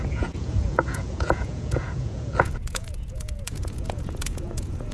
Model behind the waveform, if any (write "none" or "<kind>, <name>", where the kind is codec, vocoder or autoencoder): vocoder, Vocos